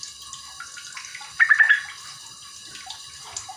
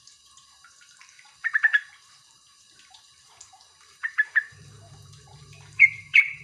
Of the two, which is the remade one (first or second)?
second